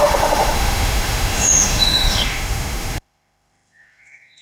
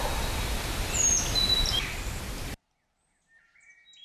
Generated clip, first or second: first